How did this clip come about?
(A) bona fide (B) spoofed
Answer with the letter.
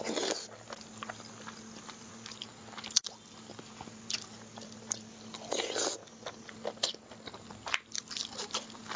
A